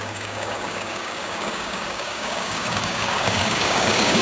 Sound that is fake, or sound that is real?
fake